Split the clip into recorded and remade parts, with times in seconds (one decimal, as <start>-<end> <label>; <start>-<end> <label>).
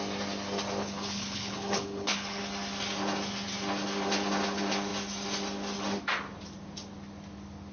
0.0-0.8 recorded; 0.8-2.4 remade; 2.4-7.7 recorded